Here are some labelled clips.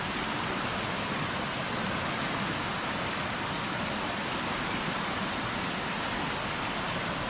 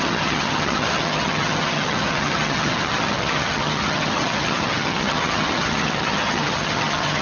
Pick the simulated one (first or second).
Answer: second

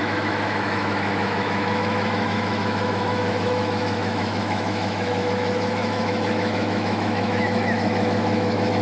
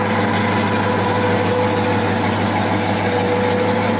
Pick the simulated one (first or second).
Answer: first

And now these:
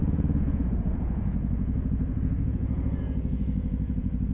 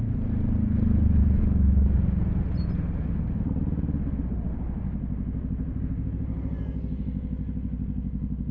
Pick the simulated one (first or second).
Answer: first